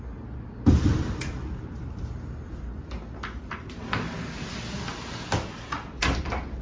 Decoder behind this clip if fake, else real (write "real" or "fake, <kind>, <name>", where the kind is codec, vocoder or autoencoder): real